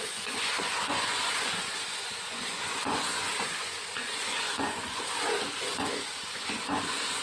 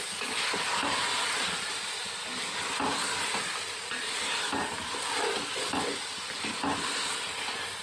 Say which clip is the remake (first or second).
first